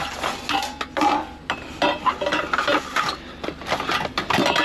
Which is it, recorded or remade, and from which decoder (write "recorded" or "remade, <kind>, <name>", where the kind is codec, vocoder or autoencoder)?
recorded